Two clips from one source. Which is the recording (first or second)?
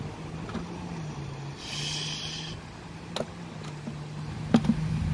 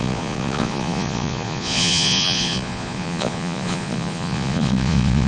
first